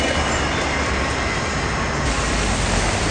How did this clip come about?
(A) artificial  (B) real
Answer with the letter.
B